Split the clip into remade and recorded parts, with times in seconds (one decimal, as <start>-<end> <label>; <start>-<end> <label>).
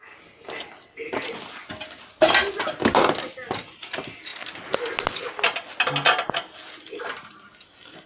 0.0-8.1 recorded